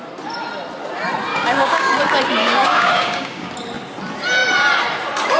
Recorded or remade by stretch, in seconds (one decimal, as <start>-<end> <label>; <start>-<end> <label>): 0.0-1.3 recorded; 1.3-1.9 remade; 1.9-2.4 recorded; 2.4-3.5 remade; 3.5-5.4 recorded